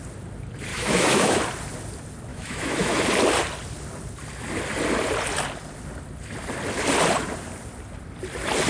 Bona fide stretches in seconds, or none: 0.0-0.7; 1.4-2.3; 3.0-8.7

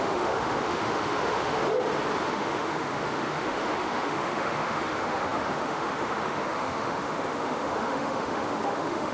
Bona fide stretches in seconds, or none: 1.6-2.3

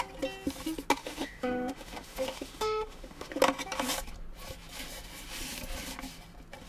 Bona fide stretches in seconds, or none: 0.0-1.0; 3.4-6.7

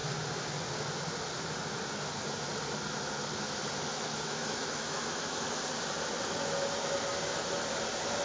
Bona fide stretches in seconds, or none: 0.0-3.9; 5.6-8.2

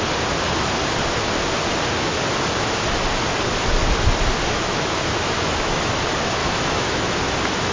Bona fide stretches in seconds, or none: 0.0-4.5; 5.9-6.4; 7.1-7.7